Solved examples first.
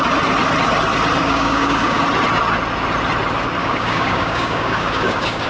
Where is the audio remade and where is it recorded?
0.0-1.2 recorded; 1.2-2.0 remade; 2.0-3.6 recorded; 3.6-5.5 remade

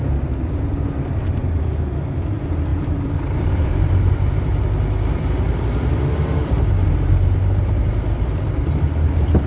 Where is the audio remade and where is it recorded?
0.0-2.7 recorded; 2.7-4.6 remade; 4.6-6.4 recorded; 6.4-8.7 remade; 8.7-9.5 recorded

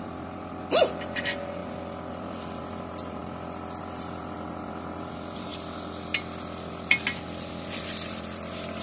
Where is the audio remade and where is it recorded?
0.0-3.2 remade; 3.2-3.8 recorded; 3.8-5.5 remade; 5.5-7.5 recorded; 7.5-8.8 remade

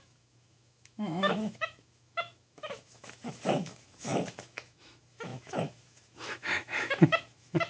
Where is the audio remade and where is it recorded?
0.0-7.7 remade